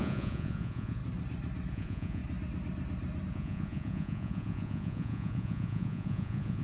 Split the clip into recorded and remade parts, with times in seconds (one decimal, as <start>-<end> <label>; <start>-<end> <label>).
0.0-1.0 remade; 1.0-1.7 recorded; 1.7-2.2 remade; 2.2-3.3 recorded; 3.3-6.6 remade